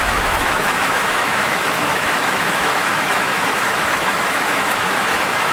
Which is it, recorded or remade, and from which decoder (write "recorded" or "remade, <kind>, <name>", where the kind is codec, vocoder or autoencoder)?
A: remade, autoencoder, DAC-VAE